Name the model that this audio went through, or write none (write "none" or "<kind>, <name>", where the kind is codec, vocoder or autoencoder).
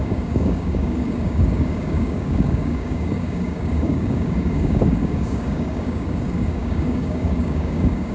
codec, DAC